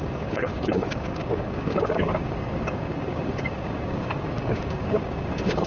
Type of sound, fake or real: fake